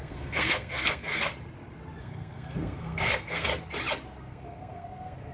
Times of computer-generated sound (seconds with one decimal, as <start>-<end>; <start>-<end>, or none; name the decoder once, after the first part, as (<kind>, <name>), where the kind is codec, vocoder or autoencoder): 0.0-1.3 (codec, SNAC); 2.0-3.5; 4.2-5.3